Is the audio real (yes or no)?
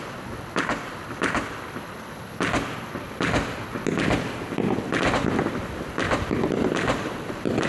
yes